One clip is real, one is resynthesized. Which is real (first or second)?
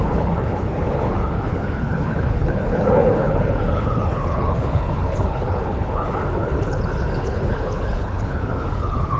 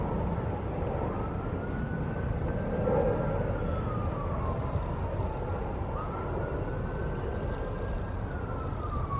second